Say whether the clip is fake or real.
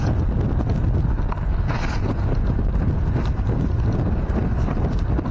real